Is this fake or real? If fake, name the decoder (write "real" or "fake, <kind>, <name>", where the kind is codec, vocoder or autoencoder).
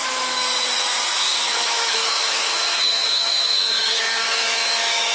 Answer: fake, autoencoder, DAC-VAE